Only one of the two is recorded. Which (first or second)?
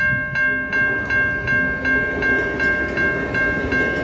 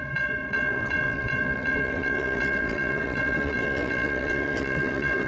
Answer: first